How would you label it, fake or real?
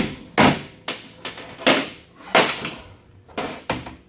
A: real